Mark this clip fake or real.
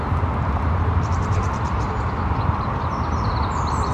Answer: fake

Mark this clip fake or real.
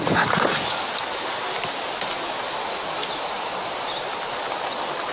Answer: real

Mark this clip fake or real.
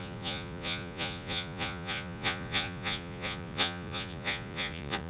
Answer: fake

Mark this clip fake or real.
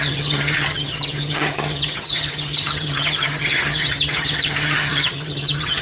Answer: fake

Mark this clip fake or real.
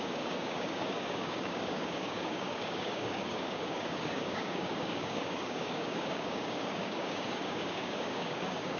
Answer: fake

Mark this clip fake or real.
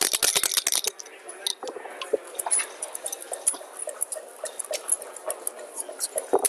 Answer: real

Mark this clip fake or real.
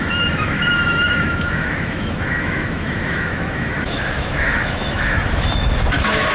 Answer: fake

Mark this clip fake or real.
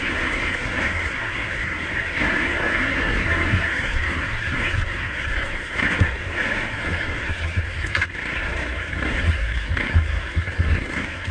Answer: fake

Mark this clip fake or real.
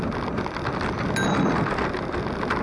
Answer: real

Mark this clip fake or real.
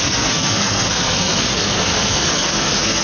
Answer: fake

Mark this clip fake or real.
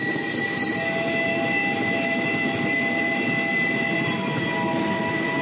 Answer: real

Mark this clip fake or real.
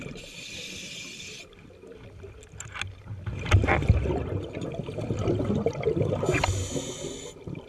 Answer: real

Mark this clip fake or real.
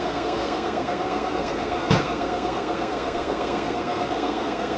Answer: fake